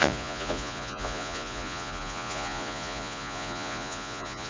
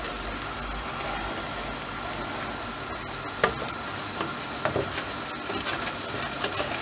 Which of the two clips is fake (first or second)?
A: first